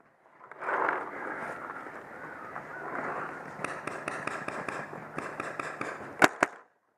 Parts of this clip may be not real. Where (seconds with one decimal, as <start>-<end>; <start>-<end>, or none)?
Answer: none